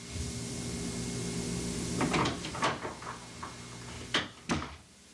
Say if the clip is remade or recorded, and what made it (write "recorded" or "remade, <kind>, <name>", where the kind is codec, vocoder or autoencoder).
recorded